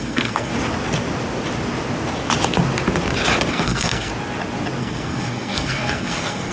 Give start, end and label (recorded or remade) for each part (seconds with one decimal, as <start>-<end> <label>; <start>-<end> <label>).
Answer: 0.0-0.5 remade; 0.5-3.5 recorded; 3.5-4.1 remade; 4.1-4.8 recorded; 4.8-6.5 remade